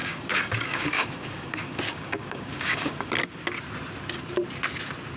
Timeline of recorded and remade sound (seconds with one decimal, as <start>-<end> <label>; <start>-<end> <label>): 0.0-3.1 remade; 3.1-5.2 recorded